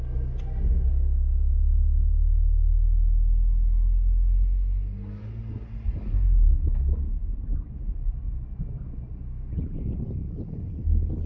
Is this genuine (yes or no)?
yes